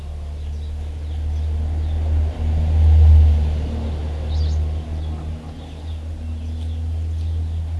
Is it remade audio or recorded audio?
recorded